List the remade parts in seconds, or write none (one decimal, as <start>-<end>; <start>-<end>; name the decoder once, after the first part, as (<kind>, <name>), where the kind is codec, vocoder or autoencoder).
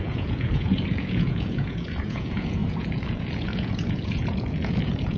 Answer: 0.0-5.2 (vocoder, Vocos)